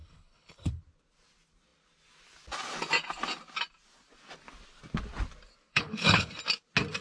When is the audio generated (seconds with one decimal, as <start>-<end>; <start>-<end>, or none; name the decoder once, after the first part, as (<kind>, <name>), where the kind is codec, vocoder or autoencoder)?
0.0-0.8 (codec, HILCodec); 5.7-6.3